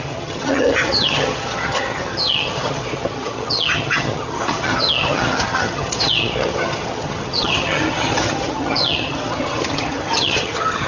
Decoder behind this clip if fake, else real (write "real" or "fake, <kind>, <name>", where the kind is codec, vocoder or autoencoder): fake, vocoder, HiFi-GAN